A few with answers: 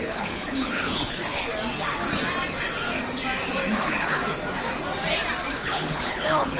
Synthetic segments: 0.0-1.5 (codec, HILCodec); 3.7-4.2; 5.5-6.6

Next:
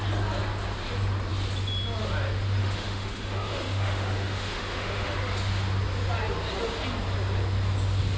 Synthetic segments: 2.6-5.2 (autoencoder, DAC-VAE)

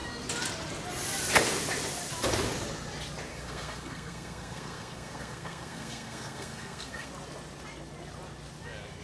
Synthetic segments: 3.3-7.1 (codec, SNAC)

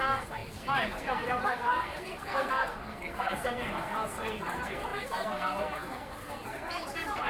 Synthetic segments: 0.0-7.3 (codec, SNAC)

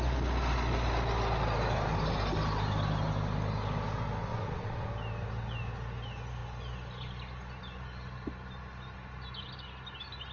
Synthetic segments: 4.3-4.9 (vocoder, WaveNeXt)

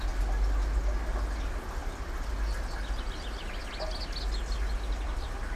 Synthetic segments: none

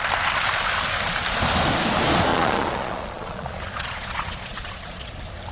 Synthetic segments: 2.3-5.1 (vocoder, Vocos)